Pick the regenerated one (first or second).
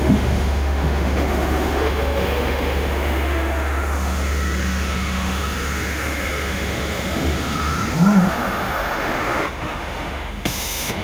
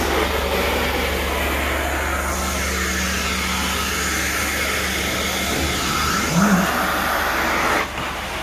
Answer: first